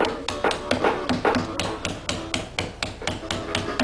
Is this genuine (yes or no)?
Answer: yes